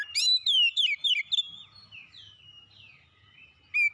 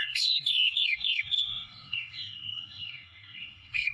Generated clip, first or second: second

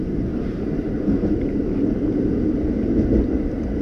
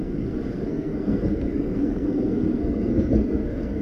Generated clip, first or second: second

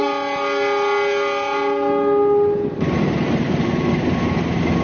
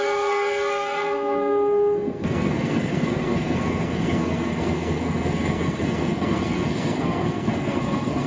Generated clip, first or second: second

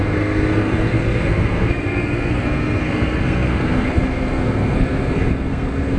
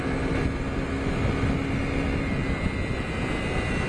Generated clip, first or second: first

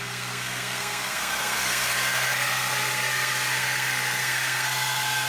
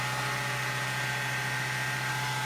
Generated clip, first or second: first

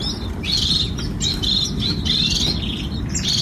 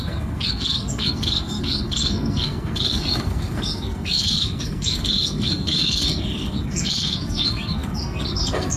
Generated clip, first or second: second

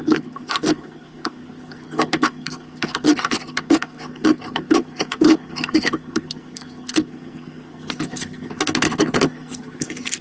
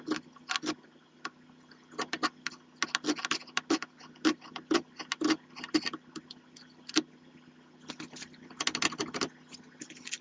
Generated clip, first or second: first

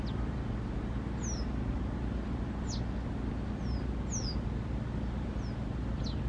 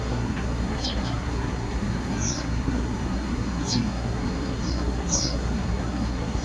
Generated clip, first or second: second